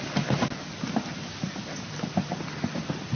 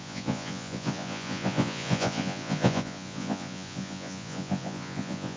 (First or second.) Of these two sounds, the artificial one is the second